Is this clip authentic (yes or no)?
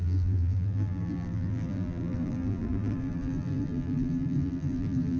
no